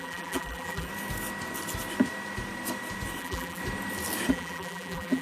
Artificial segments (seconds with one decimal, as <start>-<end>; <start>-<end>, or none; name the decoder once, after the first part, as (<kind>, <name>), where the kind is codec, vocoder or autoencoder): 0.0-0.9 (vocoder, BigVGAN v2); 3.2-3.6; 4.3-5.2